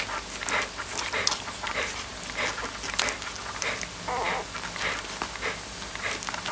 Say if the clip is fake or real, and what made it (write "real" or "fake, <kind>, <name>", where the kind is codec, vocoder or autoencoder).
real